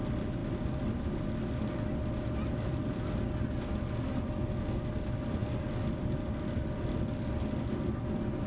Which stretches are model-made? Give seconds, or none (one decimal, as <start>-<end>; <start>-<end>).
none